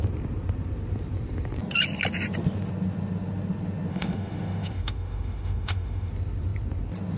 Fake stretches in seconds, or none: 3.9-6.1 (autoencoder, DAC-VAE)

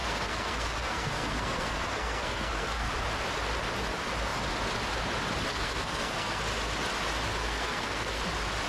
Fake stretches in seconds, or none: 0.0-2.9 (codec, SNAC); 5.5-6.4; 7.4-8.2

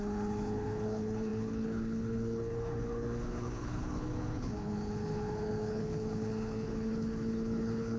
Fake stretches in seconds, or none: 0.0-8.0 (codec, HILCodec)

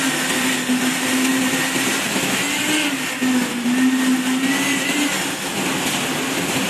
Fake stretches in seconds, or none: none

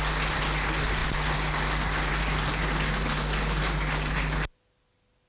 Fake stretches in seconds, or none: none

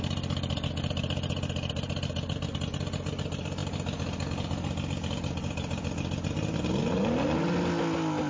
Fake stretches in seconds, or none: none

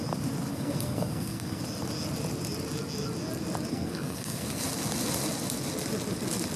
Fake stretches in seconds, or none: 0.5-1.6 (codec, SNAC); 3.7-4.6